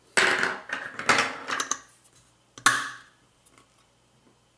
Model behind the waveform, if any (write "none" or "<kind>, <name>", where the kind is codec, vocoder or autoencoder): none